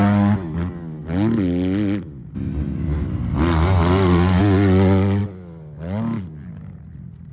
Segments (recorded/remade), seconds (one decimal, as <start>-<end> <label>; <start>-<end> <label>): 0.0-7.3 recorded